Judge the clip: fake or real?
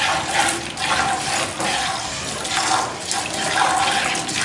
real